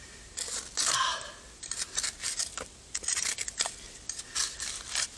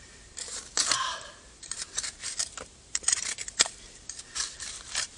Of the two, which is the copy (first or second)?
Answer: second